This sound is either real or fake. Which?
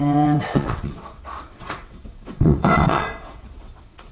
fake